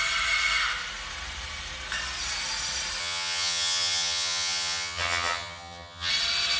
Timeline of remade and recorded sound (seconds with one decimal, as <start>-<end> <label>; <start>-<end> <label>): 0.0-3.0 recorded; 3.0-6.1 remade; 6.1-6.6 recorded